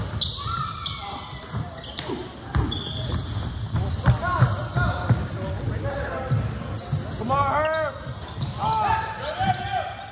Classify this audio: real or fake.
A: real